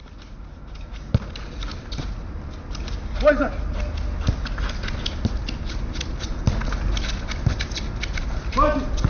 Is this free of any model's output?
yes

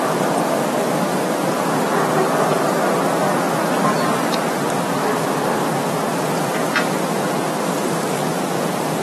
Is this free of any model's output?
yes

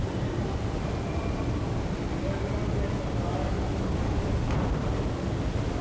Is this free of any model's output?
yes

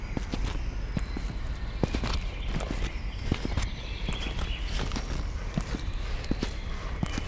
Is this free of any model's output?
yes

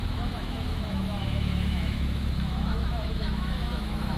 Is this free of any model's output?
no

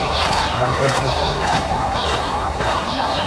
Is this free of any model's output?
no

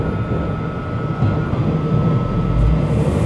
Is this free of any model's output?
yes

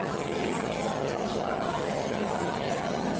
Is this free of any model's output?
no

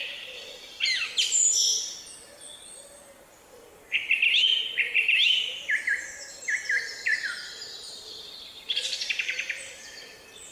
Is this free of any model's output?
no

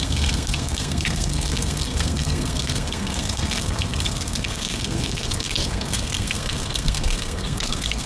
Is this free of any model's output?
no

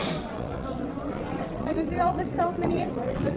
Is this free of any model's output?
no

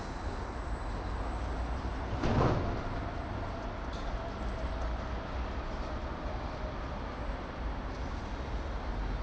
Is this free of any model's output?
yes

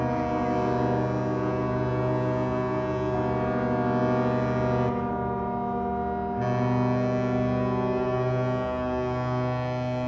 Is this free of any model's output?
yes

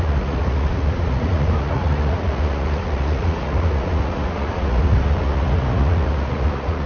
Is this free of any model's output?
no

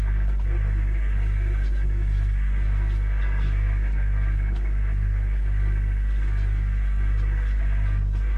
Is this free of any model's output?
no